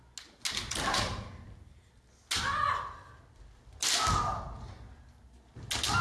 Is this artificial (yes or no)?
no